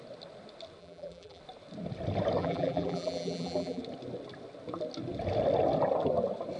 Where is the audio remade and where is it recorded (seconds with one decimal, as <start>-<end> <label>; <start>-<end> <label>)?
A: 0.0-0.8 recorded; 0.8-1.4 remade; 1.4-2.4 recorded; 2.4-3.8 remade; 3.8-6.6 recorded